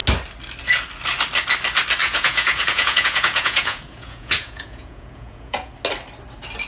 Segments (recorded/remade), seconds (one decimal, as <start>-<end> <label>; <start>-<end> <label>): 0.0-2.0 recorded; 2.0-5.7 remade; 5.7-6.7 recorded